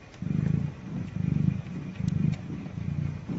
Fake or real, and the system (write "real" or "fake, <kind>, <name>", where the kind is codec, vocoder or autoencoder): real